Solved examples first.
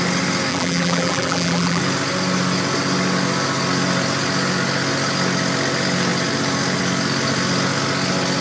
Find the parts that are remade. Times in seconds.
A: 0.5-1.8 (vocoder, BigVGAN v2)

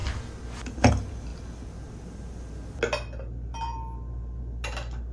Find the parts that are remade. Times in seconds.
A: 0.0-0.9 (vocoder, BigVGAN v2)

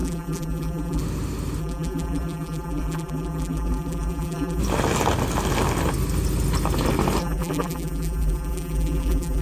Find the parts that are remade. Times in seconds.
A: 0.0-1.0 (vocoder, BigVGAN v2); 1.6-4.6; 7.2-9.4